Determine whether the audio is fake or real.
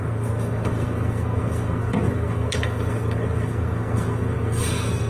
fake